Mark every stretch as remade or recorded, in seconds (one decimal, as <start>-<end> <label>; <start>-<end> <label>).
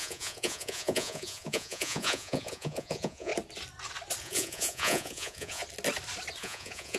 0.0-3.3 remade; 3.3-4.2 recorded; 4.2-5.6 remade; 5.6-6.4 recorded; 6.4-7.0 remade